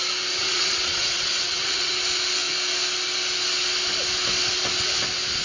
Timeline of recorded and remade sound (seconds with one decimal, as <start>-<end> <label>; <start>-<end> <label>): 0.0-0.4 recorded; 0.4-1.9 remade; 1.9-5.4 recorded